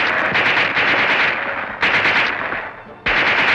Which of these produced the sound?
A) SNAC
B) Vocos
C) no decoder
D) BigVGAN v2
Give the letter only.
C